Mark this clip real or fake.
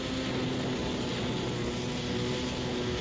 real